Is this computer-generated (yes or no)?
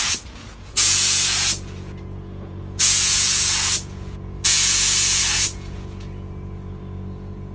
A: yes